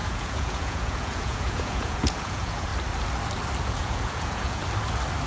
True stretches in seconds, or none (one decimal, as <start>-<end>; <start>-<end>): 2.7-3.6; 4.6-5.3